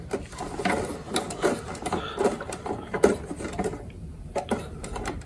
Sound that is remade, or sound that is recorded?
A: recorded